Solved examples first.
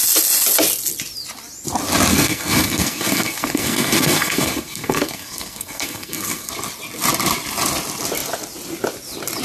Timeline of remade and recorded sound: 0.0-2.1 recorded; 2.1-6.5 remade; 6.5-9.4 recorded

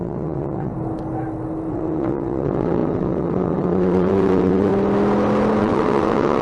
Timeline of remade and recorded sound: 0.0-0.7 remade; 0.7-1.7 recorded; 1.7-4.7 remade; 4.7-5.6 recorded; 5.6-6.4 remade

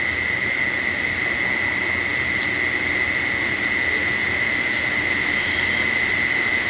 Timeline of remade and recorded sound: 0.0-6.7 recorded

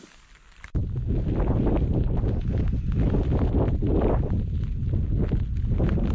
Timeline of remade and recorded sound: 0.0-6.1 recorded